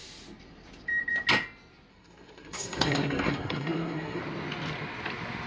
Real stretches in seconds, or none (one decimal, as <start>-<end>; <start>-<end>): 0.0-1.9; 4.2-5.5